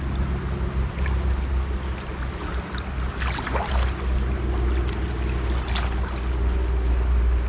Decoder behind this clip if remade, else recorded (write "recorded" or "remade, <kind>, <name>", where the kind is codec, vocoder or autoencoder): recorded